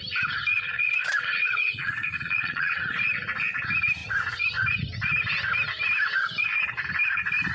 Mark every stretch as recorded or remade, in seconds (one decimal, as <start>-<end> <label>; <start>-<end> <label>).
0.0-0.5 recorded; 0.5-2.8 remade; 2.8-7.5 recorded